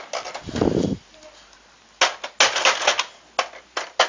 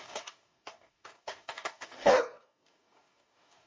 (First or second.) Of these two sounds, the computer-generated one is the second